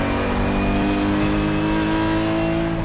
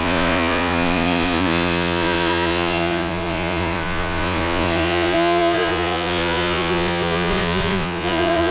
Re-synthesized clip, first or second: second